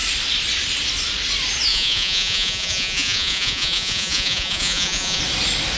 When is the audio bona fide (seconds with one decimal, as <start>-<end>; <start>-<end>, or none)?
0.0-1.7; 5.2-5.8